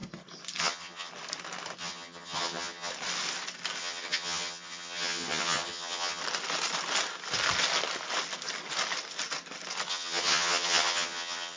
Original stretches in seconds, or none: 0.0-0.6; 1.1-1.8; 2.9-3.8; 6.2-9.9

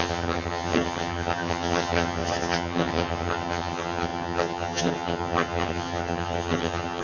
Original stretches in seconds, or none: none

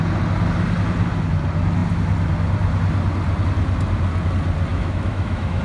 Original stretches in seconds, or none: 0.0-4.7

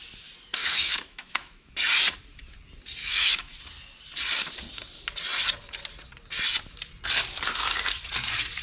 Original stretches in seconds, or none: 0.0-0.6; 1.7-3.0; 3.6-8.6

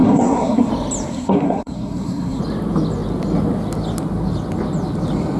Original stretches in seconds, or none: 0.7-1.1; 2.4-5.4

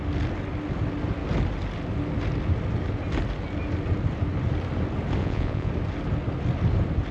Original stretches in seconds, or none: 0.0-5.2; 5.7-7.1